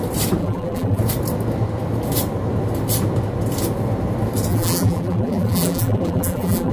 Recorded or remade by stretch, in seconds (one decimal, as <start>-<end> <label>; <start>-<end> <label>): 0.0-0.4 recorded; 0.4-1.0 remade; 1.0-4.5 recorded; 4.5-6.7 remade